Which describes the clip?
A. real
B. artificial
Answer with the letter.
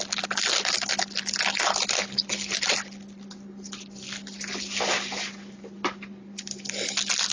A